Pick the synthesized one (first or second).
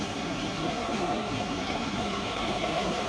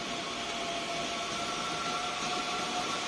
first